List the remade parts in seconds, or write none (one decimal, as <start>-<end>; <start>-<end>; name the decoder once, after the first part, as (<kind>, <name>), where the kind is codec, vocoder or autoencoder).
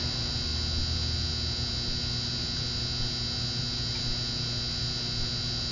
none